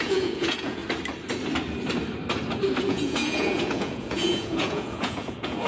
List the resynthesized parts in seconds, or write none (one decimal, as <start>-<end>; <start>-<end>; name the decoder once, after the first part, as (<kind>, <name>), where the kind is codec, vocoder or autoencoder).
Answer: 0.0-0.8 (vocoder, Vocos); 2.8-5.7